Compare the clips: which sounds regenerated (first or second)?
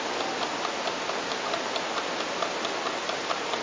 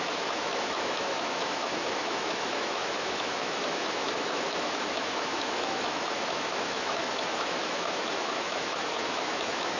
second